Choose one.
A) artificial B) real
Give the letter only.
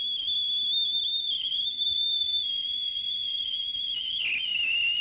B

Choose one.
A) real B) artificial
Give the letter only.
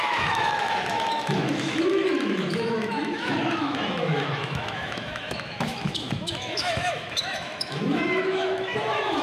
B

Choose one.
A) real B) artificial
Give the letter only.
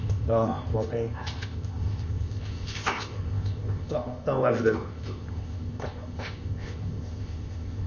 B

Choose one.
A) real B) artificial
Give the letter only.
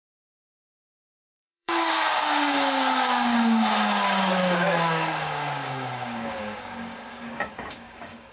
B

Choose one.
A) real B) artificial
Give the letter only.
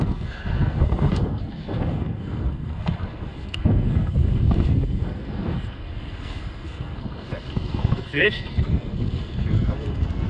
B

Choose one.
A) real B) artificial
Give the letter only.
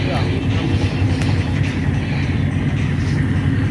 A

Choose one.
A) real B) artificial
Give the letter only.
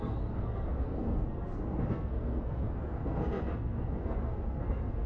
B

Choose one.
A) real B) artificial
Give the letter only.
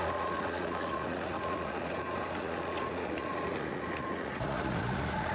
B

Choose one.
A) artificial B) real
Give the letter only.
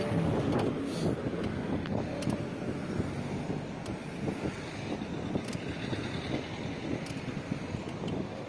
B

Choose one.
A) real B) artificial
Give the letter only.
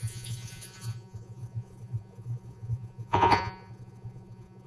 B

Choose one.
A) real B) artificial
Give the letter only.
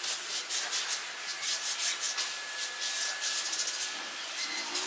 A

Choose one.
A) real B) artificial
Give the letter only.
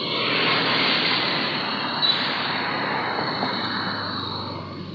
A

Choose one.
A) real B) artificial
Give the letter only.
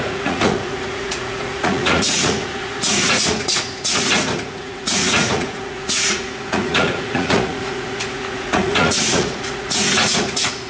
B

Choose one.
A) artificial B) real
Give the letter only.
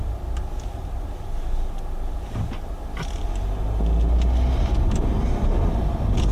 B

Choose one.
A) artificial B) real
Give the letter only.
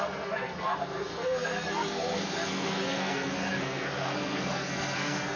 A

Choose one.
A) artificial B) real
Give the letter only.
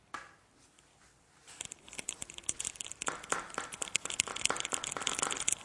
B